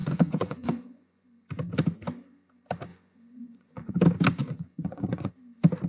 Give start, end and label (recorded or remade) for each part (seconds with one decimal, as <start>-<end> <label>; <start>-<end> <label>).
0.0-1.5 remade; 1.5-2.9 recorded; 2.9-3.9 remade; 3.9-4.4 recorded; 4.4-5.3 remade; 5.3-5.9 recorded